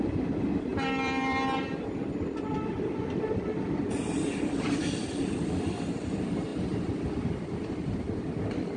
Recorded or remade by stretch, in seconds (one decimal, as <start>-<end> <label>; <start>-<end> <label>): 0.0-0.7 recorded; 0.7-4.3 remade; 4.3-6.5 recorded; 6.5-8.8 remade